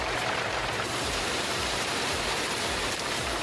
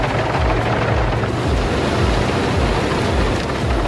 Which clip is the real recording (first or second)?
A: second